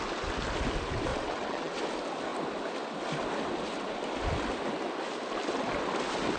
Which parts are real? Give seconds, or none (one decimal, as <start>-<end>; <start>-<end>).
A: 0.0-1.1; 1.8-6.4